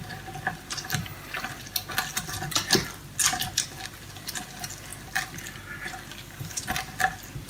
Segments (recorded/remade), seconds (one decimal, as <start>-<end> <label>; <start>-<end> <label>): 0.0-6.1 recorded; 6.1-6.6 remade; 6.6-7.5 recorded